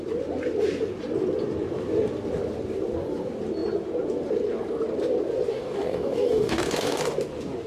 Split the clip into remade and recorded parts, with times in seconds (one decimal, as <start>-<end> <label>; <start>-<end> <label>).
0.0-5.5 recorded; 5.5-7.0 remade; 7.0-7.7 recorded